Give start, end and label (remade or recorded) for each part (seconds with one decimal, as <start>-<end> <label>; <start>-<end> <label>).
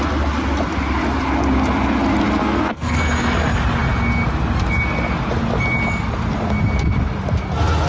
0.0-2.4 recorded; 2.4-3.0 remade; 3.0-7.9 recorded